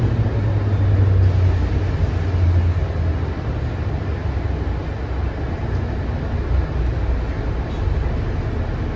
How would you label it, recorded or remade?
recorded